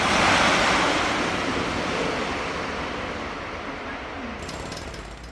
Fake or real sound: real